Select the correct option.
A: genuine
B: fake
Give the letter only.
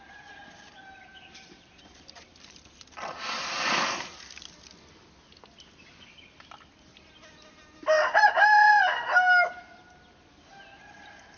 A